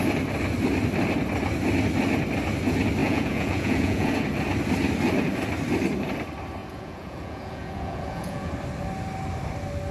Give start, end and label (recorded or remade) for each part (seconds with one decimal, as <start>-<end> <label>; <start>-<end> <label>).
0.0-3.0 recorded; 3.0-4.1 remade; 4.1-6.6 recorded; 6.6-8.5 remade; 8.5-9.9 recorded